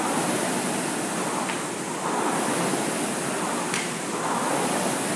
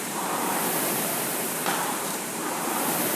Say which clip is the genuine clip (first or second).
first